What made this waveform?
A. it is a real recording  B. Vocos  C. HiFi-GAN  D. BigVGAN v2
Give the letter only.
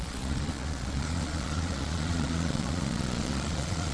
B